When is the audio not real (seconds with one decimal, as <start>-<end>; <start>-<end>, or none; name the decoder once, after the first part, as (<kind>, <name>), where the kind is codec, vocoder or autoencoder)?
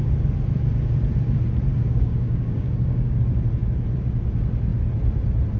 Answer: 1.8-3.2 (codec, DAC)